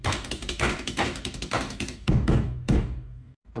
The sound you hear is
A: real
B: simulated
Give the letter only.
B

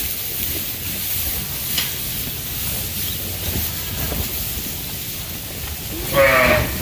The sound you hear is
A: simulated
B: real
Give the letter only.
B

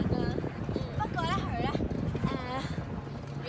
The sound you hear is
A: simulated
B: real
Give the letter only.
B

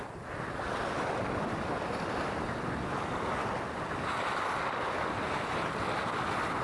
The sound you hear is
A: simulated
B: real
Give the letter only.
B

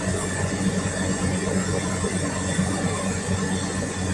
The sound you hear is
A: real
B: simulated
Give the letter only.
B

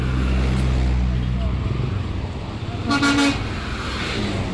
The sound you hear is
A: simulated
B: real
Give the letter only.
B